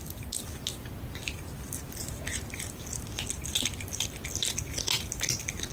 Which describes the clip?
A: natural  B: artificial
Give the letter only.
A